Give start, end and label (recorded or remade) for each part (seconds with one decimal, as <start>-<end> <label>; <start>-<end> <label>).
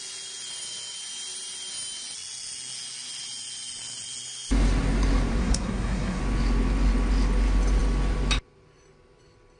0.0-5.4 recorded; 5.4-6.2 remade; 6.2-9.6 recorded